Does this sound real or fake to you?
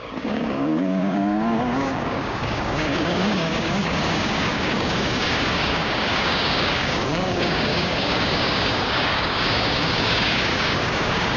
fake